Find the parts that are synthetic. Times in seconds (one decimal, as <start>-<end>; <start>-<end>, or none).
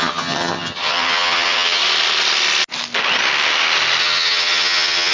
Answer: 0.0-1.8; 4.0-5.1